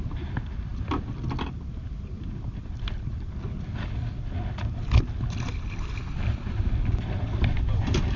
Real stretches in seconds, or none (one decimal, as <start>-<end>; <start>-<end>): 0.0-8.2